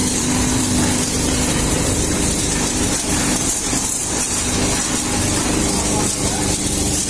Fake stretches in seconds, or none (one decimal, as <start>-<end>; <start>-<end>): 0.0-4.0; 6.6-7.1